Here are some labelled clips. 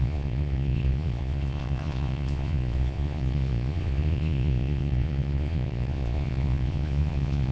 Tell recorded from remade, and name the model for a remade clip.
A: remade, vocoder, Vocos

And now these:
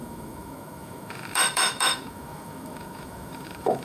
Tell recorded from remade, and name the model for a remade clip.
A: remade, autoencoder, DAC-VAE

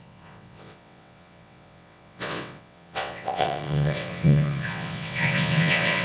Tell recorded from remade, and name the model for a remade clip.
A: remade, vocoder, WaveNeXt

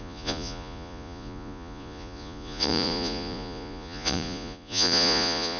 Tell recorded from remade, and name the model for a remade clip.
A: remade, vocoder, Vocos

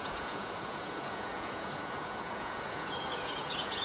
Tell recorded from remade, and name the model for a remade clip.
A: remade, vocoder, Vocos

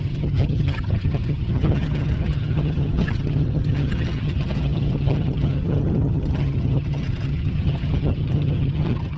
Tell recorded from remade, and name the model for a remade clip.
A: remade, vocoder, HiFi-GAN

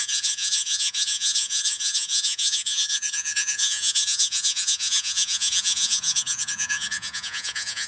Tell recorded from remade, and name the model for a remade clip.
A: remade, vocoder, Vocos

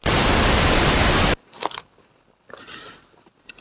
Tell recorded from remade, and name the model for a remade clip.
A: recorded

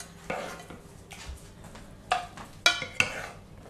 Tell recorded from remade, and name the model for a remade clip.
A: recorded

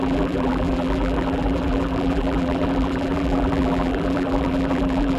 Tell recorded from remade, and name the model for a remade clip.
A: remade, vocoder, BigVGAN v2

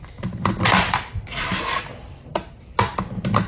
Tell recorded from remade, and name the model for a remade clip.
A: recorded